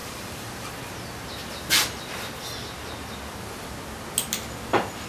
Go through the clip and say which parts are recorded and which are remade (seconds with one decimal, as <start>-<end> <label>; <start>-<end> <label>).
0.0-0.7 remade; 0.7-5.1 recorded